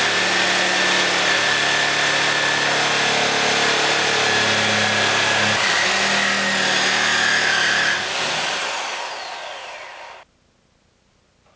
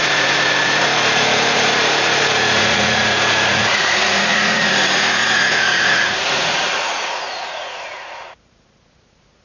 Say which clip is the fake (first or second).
second